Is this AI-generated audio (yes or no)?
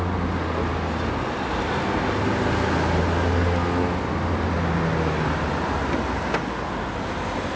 no